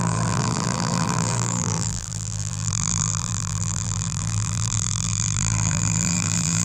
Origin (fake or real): fake